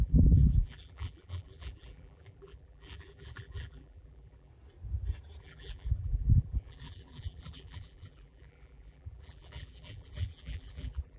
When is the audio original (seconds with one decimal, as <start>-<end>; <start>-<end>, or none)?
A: 4.5-5.4